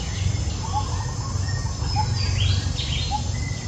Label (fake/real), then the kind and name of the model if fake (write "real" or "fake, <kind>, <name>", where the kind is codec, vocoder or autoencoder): real